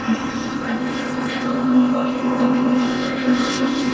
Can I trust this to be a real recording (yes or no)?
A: no